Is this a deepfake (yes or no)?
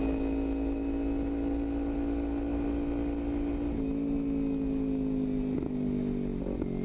no